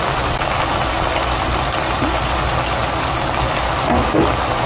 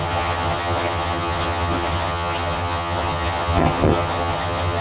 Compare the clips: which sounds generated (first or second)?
second